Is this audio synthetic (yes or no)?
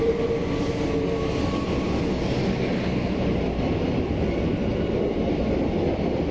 no